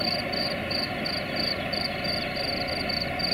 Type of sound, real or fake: real